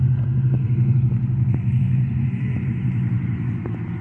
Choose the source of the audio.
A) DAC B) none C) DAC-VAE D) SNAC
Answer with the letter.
B